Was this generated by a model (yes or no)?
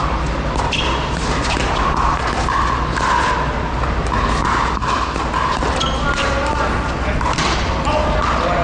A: no